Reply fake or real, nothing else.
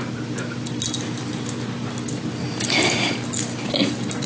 real